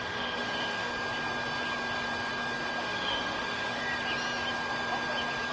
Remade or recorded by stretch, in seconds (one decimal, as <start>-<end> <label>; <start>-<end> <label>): 0.0-0.9 remade; 0.9-2.8 recorded; 2.8-3.8 remade; 3.8-5.5 recorded

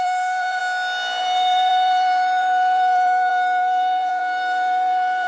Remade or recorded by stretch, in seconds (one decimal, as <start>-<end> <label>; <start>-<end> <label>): 0.0-0.6 remade; 0.6-1.2 recorded; 1.2-5.3 remade

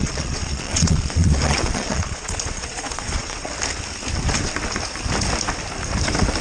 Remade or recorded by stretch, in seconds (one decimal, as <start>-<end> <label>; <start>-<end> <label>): 0.0-3.5 remade; 3.5-6.4 recorded

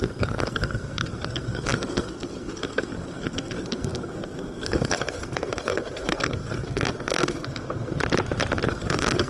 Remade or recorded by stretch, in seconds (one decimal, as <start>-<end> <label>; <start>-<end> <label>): 0.0-8.0 remade; 8.0-8.7 recorded; 8.7-9.3 remade

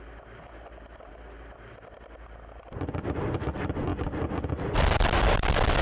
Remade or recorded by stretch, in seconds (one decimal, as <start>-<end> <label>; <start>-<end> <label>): 0.0-5.8 recorded

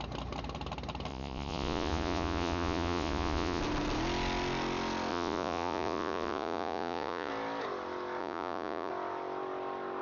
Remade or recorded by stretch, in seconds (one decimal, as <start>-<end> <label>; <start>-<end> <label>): 0.0-1.1 recorded; 1.1-3.6 remade; 3.6-5.1 recorded; 5.1-7.3 remade; 7.3-8.2 recorded; 8.2-8.9 remade; 8.9-10.0 recorded